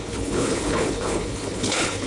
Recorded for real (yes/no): no